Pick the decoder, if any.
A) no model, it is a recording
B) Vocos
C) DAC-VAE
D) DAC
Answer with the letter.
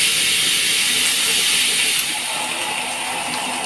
A